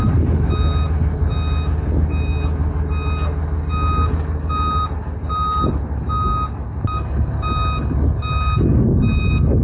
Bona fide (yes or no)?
yes